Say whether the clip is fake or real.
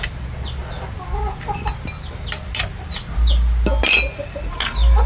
real